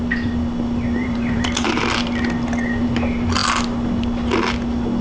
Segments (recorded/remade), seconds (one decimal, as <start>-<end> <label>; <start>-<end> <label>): 0.0-1.0 recorded; 1.0-1.7 remade; 1.7-5.0 recorded

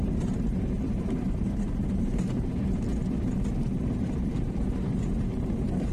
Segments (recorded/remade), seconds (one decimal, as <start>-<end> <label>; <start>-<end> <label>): 0.0-2.9 remade; 2.9-3.5 recorded; 3.5-5.9 remade

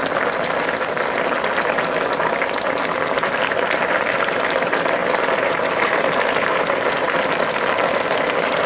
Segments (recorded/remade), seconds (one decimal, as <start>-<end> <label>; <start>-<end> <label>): 0.0-5.0 recorded; 5.0-7.2 remade; 7.2-8.7 recorded

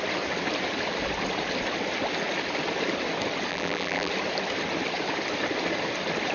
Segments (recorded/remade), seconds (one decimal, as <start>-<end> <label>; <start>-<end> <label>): 0.0-3.5 recorded; 3.5-4.1 remade; 4.1-6.3 recorded